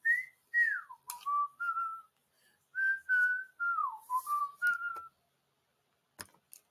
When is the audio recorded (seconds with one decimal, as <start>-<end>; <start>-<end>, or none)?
0.0-3.8; 4.4-6.7